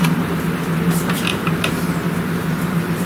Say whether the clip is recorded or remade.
recorded